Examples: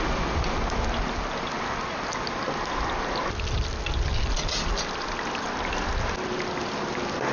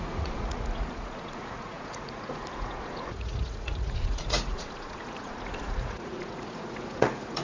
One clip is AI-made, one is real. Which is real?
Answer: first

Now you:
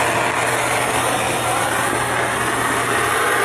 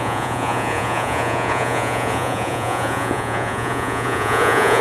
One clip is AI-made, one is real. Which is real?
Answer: first